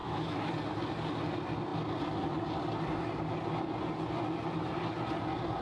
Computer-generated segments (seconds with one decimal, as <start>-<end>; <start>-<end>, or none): 0.0-0.5